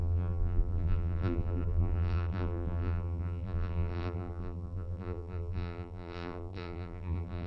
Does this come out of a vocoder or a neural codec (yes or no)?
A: yes